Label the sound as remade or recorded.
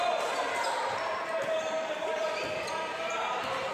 recorded